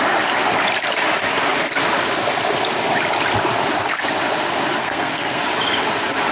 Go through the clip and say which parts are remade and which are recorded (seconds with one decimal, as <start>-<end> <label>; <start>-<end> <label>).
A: 0.0-4.8 recorded; 4.8-5.4 remade; 5.4-6.3 recorded